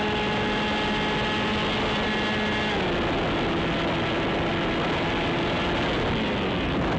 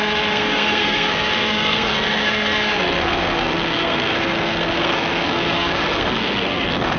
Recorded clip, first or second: first